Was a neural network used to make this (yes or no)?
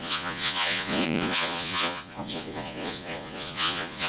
yes